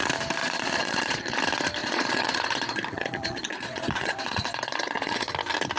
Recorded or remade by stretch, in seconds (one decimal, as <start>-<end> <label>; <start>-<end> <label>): 0.0-0.4 recorded; 0.4-1.4 remade; 1.4-1.8 recorded; 1.8-5.3 remade; 5.3-5.8 recorded